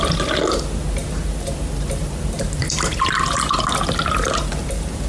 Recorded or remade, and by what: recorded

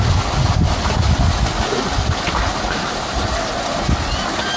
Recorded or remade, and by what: recorded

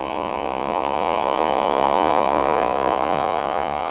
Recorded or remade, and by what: remade, vocoder, Vocos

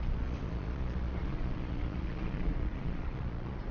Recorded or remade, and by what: remade, vocoder, Vocos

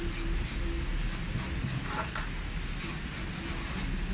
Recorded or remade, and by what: recorded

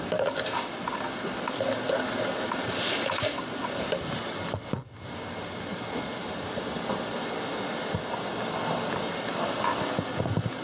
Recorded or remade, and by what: recorded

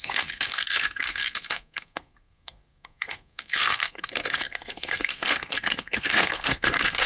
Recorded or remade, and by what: remade, codec, SNAC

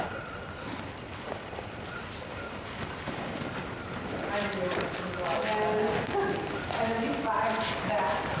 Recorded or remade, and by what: recorded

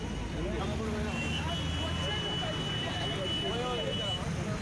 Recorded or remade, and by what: recorded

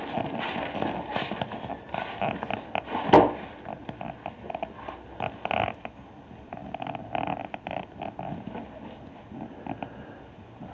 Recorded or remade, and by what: recorded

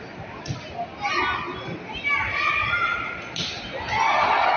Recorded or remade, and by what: recorded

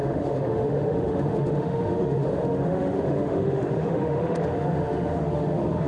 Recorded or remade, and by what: remade, autoencoder, DAC-VAE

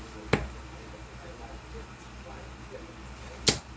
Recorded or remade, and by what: recorded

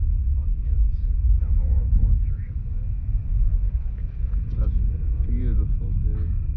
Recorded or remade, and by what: remade, vocoder, Vocos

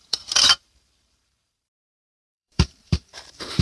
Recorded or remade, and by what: remade, vocoder, BigVGAN v2